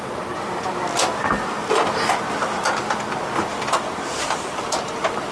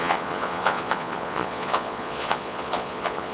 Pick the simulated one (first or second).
second